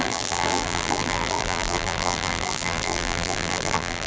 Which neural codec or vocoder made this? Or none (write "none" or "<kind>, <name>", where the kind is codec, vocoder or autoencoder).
vocoder, BigVGAN v2